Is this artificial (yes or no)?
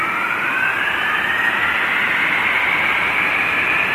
no